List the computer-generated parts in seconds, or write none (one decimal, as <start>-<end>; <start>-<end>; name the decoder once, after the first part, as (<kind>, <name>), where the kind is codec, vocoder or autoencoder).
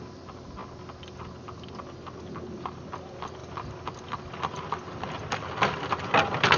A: none